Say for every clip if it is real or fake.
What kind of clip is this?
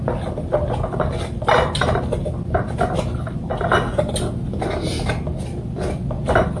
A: real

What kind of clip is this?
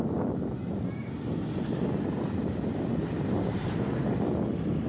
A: real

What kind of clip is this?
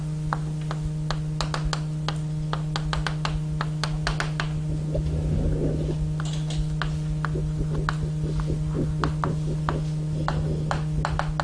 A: real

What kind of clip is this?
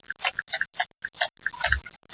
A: real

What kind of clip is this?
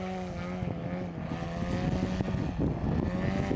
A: real